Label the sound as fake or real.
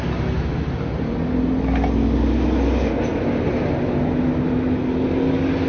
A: real